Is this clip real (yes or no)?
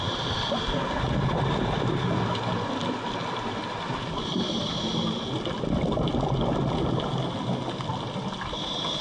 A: yes